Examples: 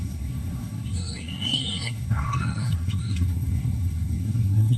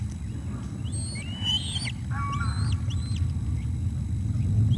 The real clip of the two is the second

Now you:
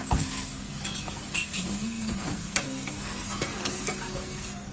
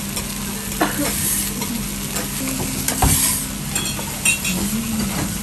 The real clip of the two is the second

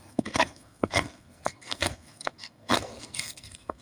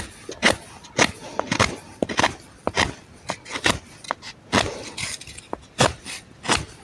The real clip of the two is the second